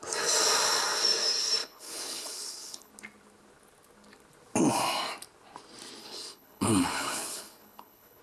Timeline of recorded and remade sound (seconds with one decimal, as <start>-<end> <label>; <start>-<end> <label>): 0.0-1.6 recorded; 1.6-2.9 remade; 2.9-6.0 recorded; 6.0-8.2 remade